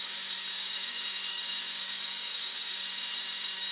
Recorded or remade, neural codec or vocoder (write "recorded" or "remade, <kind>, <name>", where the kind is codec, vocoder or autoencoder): remade, codec, DAC